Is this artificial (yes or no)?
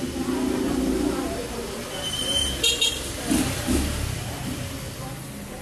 no